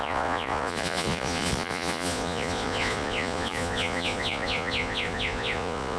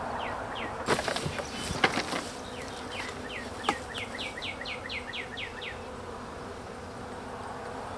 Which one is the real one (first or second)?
second